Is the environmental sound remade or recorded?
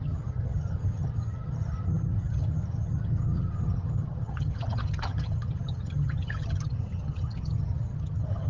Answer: remade